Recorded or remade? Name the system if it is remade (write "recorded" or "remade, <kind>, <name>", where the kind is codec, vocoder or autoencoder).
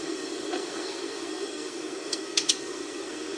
remade, codec, SNAC